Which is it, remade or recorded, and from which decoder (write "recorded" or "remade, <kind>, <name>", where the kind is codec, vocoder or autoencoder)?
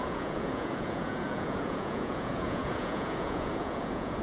remade, vocoder, Vocos